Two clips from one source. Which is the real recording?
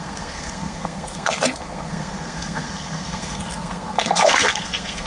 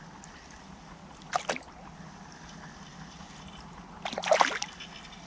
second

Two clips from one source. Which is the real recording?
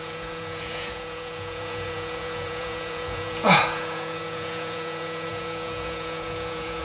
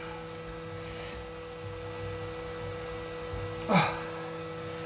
second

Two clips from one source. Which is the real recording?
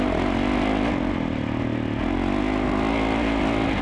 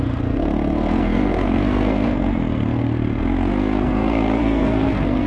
first